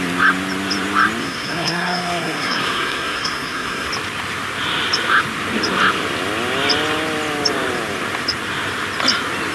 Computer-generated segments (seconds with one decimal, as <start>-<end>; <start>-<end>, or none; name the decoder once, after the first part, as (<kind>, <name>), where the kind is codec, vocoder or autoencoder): 1.2-3.9 (codec, SNAC)